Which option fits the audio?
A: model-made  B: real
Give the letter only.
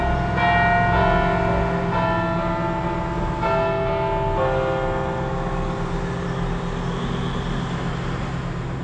B